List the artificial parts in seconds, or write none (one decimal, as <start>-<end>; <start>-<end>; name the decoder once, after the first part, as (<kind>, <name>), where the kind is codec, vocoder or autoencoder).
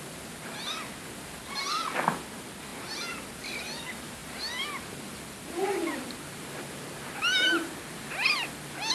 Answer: none